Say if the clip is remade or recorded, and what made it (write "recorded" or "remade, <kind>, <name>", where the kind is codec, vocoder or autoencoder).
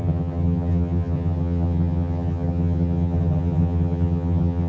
remade, vocoder, HiFi-GAN